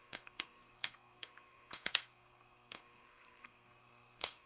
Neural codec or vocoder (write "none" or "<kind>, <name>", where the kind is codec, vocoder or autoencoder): codec, SNAC